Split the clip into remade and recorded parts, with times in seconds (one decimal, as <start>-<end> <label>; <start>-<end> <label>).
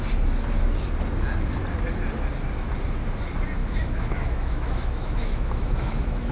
0.0-3.6 recorded; 3.6-6.3 remade